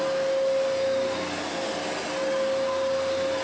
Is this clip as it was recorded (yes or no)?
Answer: yes